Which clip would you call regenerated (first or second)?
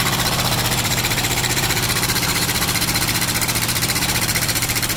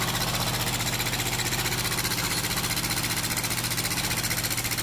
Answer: first